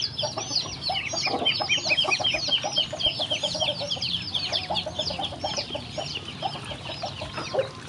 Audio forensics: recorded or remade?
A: recorded